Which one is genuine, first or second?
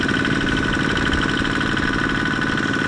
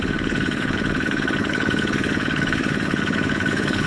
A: first